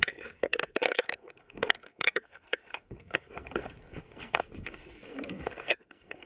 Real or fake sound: fake